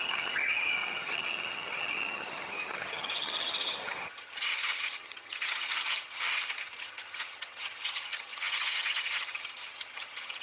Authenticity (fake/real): fake